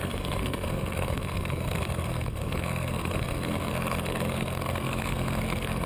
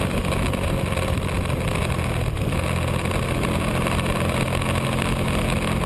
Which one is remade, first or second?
first